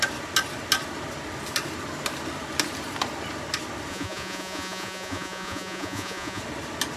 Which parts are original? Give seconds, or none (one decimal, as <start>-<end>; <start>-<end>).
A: 0.0-3.9; 6.4-7.0